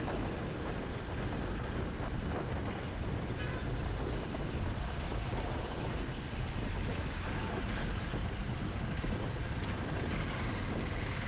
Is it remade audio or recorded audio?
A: recorded